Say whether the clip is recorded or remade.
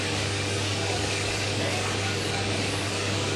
remade